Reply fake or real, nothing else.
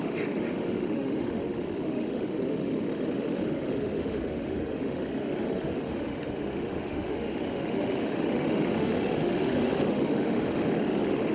fake